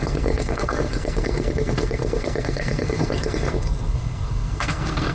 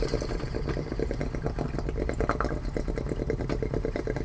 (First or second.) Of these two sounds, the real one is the second